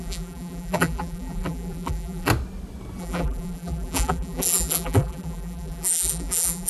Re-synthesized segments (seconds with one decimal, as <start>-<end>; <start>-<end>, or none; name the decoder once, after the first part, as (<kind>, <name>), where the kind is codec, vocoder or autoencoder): 0.0-2.3 (vocoder, BigVGAN v2); 3.0-6.7